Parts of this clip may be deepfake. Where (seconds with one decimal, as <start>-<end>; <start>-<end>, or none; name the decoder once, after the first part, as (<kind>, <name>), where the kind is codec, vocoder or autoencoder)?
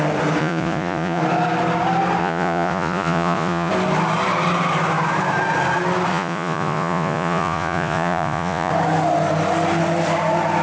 0.4-1.2 (vocoder, Vocos); 2.2-3.7; 6.1-8.7